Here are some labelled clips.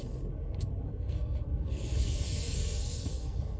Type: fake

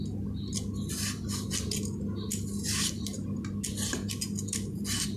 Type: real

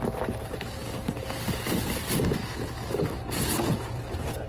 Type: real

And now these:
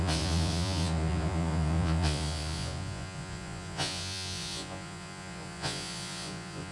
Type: fake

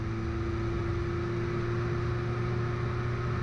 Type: real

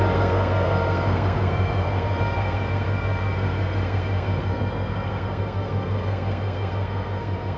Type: fake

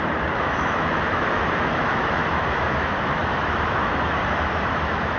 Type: fake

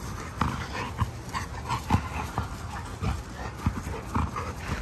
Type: real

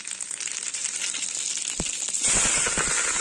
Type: real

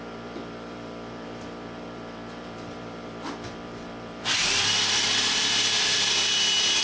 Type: fake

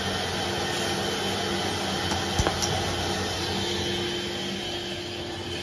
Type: real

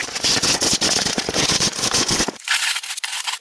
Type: fake